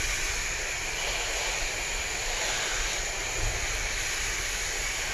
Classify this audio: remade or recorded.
recorded